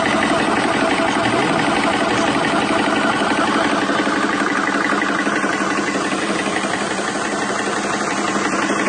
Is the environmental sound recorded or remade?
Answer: remade